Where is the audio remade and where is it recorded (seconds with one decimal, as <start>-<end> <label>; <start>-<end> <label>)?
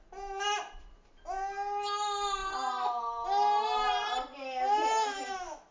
0.0-5.0 recorded; 5.0-5.7 remade